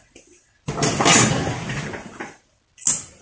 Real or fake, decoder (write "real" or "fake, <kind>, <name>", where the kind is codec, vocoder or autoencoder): real